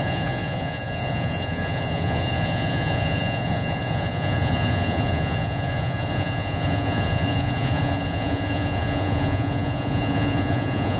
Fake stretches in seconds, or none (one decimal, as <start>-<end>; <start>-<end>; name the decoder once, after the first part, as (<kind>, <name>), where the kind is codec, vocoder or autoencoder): 0.0-11.0 (vocoder, Vocos)